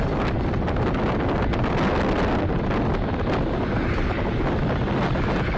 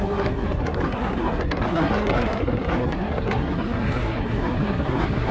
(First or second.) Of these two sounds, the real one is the first